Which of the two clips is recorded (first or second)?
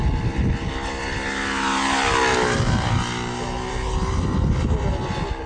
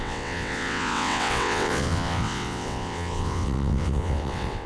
first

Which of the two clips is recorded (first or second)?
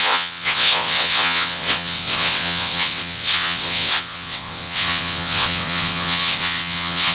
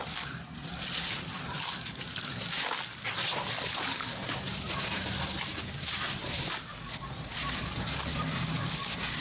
second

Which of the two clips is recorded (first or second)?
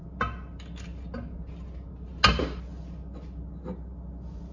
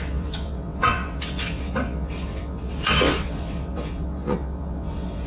first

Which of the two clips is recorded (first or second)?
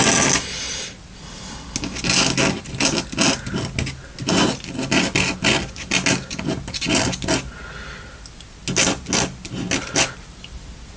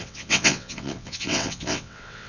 first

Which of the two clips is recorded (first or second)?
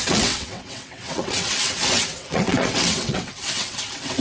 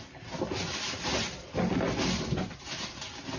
second